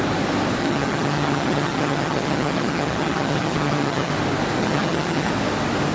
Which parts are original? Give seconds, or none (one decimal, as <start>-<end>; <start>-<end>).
0.0-0.6; 4.1-4.6; 5.3-5.9